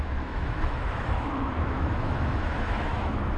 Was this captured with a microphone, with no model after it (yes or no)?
no